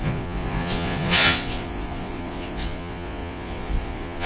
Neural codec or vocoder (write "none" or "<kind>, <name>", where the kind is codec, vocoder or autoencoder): vocoder, Vocos